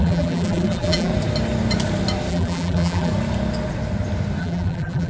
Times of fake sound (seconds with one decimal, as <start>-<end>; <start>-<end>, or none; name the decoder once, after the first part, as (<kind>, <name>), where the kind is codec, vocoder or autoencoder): 0.0-1.1 (vocoder, BigVGAN v2); 2.3-3.1; 4.4-5.1